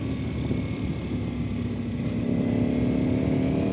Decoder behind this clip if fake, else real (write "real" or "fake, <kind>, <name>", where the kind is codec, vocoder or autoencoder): real